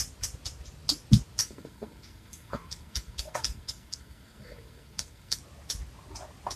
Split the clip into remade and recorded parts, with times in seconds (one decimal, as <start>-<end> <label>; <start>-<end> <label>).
0.0-1.4 recorded; 1.4-5.4 remade; 5.4-6.6 recorded